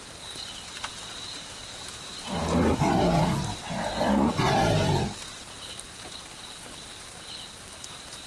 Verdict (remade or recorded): recorded